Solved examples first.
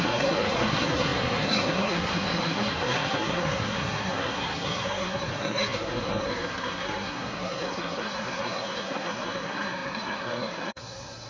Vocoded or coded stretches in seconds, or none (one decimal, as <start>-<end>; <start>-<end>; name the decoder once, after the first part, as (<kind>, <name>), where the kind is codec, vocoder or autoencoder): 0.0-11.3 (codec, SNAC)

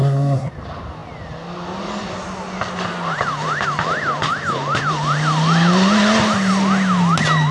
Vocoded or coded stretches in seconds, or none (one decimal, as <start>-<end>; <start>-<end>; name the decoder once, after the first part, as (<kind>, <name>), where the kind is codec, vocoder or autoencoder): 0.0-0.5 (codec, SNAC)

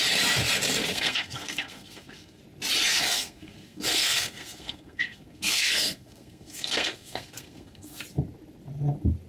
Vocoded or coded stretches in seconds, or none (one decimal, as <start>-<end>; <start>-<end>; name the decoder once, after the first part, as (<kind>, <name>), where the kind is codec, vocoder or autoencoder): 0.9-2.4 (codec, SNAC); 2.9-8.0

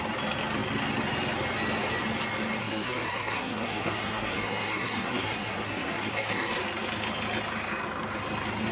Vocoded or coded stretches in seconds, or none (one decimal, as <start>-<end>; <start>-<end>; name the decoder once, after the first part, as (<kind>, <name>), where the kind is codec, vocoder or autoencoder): 2.6-6.6 (codec, SNAC)

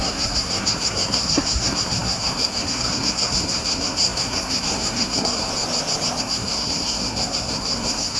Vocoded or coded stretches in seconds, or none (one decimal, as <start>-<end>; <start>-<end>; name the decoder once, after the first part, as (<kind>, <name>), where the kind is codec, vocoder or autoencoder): 0.0-5.5 (codec, SNAC); 6.2-8.2